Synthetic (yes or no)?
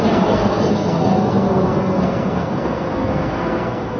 yes